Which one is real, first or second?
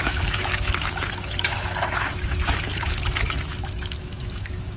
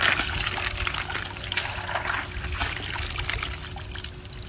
second